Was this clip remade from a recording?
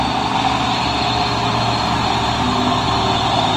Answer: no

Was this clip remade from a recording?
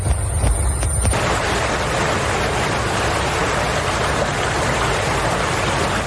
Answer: no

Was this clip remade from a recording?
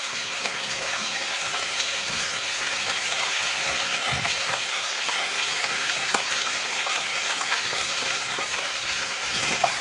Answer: yes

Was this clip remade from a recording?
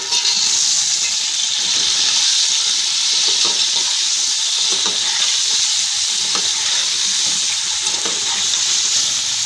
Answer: no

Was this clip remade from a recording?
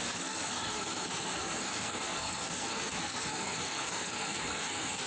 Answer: yes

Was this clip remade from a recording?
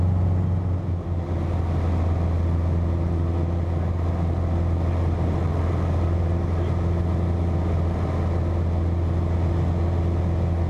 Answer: no